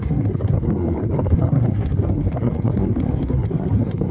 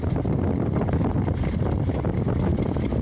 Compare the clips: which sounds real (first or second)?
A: second